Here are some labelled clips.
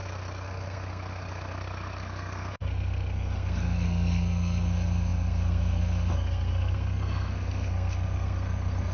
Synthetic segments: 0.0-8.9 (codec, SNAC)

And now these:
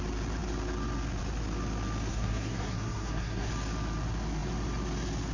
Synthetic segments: 2.1-3.5 (codec, SNAC)

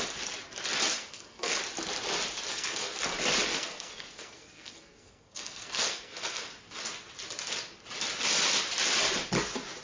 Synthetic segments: 1.0-1.6 (codec, SNAC); 2.5-3.0; 3.5-6.5

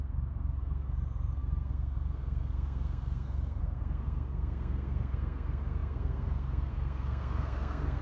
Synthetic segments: 0.0-8.0 (codec, SNAC)

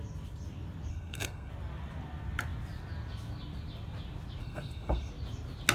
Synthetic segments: 0.9-1.5 (codec, SNAC); 4.4-5.1